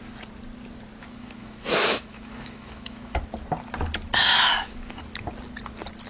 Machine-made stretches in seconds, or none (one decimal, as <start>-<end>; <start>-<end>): 1.0-3.2; 4.3-5.0